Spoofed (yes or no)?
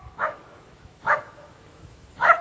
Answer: yes